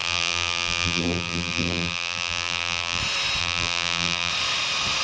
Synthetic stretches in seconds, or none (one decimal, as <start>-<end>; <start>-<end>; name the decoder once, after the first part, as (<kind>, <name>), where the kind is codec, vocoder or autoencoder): 0.0-3.0 (vocoder, BigVGAN v2); 3.4-4.3